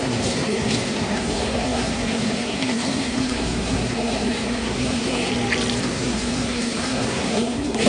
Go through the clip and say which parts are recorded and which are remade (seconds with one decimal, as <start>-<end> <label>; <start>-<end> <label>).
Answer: 0.0-5.3 remade; 5.3-5.8 recorded; 5.8-7.9 remade